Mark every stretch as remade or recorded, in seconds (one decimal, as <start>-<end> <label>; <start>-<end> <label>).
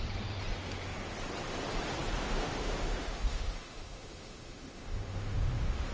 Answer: 0.0-2.2 recorded; 2.2-5.9 remade